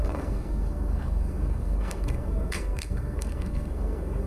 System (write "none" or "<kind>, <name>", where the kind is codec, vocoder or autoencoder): codec, SNAC